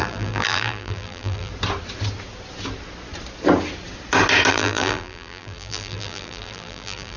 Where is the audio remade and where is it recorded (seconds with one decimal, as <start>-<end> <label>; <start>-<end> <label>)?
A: 0.0-1.5 remade; 1.5-4.5 recorded; 4.5-7.2 remade